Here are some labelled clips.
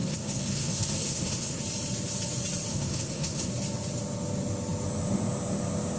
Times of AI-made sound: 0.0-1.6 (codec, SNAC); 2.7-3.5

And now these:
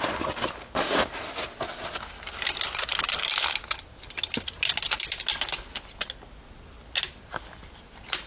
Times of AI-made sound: none